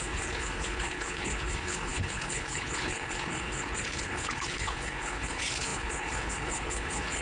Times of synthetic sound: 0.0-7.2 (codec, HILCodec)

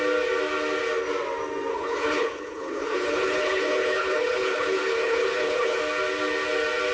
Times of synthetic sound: 1.7-5.8 (codec, HILCodec)